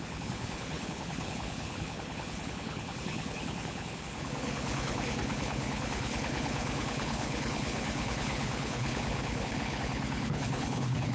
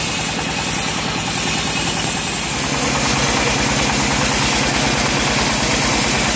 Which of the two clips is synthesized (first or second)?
first